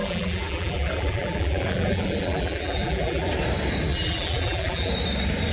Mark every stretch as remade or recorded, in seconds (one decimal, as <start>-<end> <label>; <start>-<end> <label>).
0.0-3.3 remade; 3.3-3.9 recorded; 3.9-4.9 remade; 4.9-5.5 recorded